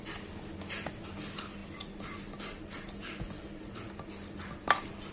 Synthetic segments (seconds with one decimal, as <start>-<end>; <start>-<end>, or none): none